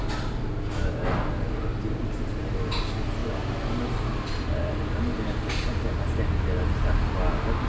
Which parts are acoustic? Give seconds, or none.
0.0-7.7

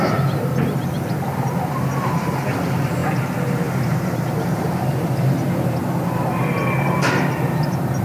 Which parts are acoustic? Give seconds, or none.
0.0-8.0

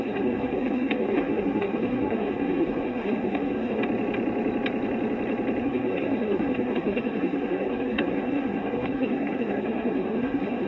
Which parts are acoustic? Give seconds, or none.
3.8-5.6

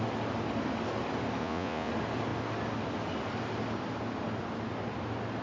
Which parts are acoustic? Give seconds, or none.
0.0-1.4; 1.9-5.4

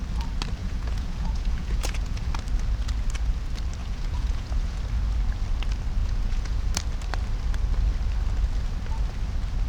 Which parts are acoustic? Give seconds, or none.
0.0-0.6; 2.3-3.8; 4.8-6.0; 6.7-9.7

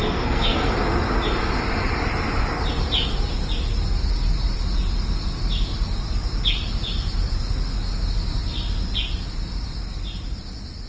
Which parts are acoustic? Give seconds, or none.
0.7-10.9

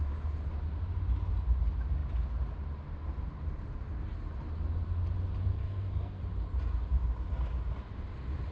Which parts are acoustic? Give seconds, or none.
0.0-5.5; 6.2-8.5